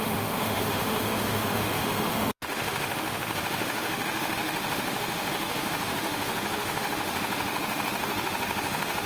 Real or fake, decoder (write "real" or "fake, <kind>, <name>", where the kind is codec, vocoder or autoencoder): fake, autoencoder, DAC-VAE